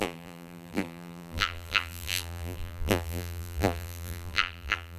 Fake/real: fake